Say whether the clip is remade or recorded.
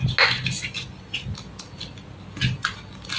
recorded